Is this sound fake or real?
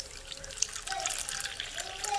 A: real